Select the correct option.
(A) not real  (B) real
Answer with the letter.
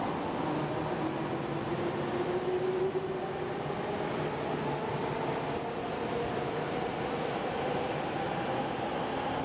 B